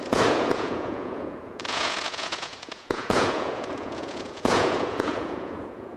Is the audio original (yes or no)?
no